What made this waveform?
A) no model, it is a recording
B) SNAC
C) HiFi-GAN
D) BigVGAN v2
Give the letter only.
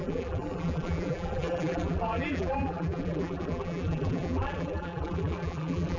D